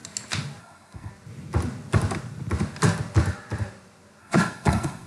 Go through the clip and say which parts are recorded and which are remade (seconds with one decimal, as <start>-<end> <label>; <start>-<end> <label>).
0.0-0.6 recorded; 0.6-1.1 remade; 1.1-4.2 recorded; 4.2-5.1 remade